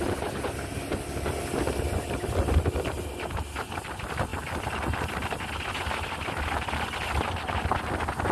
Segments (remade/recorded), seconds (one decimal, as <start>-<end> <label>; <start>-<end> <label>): 0.0-8.3 recorded